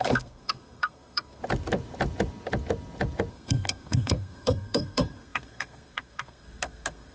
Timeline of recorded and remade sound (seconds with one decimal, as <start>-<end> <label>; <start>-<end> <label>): 0.0-1.4 remade; 1.4-3.3 recorded; 3.3-7.1 remade